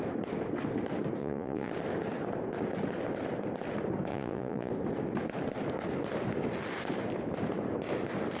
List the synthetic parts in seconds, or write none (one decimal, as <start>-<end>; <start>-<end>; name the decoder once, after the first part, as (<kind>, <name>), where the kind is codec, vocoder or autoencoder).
1.2-1.7 (vocoder, Vocos); 4.1-4.7